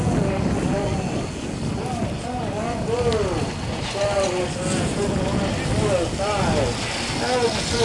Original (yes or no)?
yes